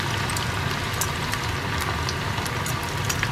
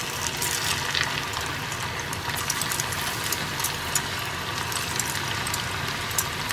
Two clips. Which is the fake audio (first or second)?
first